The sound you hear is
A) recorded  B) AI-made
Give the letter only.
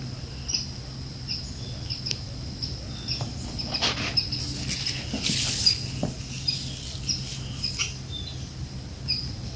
A